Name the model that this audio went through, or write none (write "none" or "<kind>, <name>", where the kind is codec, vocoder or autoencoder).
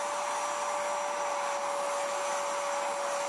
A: none